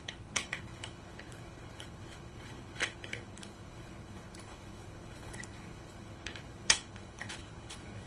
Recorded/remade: remade